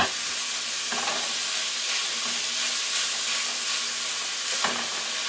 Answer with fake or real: real